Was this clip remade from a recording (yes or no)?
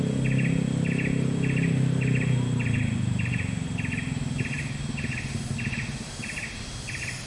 no